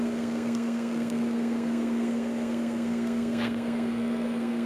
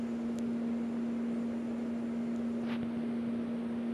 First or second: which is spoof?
first